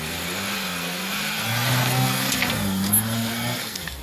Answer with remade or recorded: remade